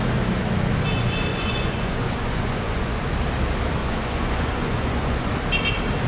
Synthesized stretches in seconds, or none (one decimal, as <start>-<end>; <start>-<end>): 1.3-3.0; 3.8-5.3